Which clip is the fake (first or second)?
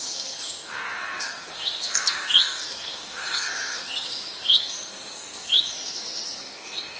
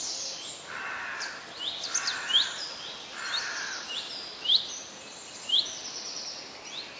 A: first